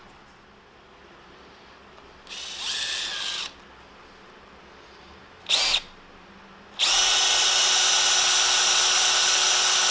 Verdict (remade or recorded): recorded